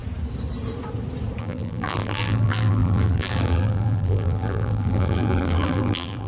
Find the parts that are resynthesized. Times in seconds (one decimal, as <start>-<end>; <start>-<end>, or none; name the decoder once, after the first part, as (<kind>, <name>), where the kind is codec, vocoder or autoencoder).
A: 1.4-6.3 (vocoder, BigVGAN v2)